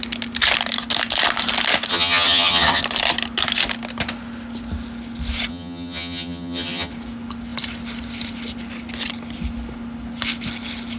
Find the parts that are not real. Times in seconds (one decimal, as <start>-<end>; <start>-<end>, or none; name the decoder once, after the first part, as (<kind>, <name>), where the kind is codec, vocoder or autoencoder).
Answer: 1.9-2.8 (vocoder, HiFi-GAN); 5.5-6.9